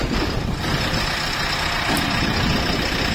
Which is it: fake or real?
real